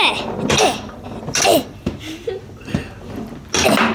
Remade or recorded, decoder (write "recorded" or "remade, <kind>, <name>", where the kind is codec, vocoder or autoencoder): recorded